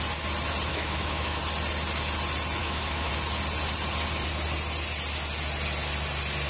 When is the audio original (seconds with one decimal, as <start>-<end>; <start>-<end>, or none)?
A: 0.0-0.7; 1.4-2.6; 3.1-6.5